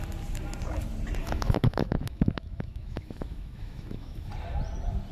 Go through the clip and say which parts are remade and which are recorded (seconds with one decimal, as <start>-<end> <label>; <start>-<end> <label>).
0.0-1.2 recorded; 1.2-4.3 remade; 4.3-5.1 recorded